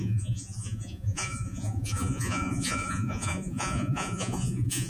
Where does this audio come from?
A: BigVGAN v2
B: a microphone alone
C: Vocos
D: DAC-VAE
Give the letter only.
C